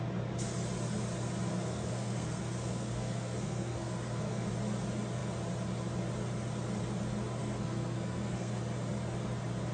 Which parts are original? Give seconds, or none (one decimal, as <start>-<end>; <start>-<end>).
0.0-1.5; 4.5-7.4; 8.6-9.7